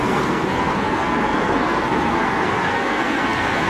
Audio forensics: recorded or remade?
remade